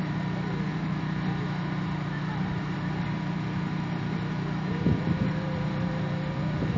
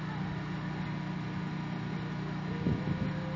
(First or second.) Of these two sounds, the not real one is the first